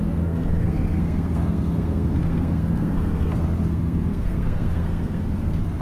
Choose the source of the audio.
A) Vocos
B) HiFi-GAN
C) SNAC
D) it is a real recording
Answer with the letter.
C